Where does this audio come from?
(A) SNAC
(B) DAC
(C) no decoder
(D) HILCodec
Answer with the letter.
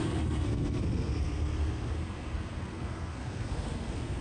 A